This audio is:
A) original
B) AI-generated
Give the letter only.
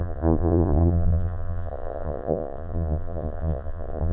B